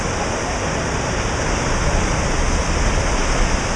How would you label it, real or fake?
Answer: real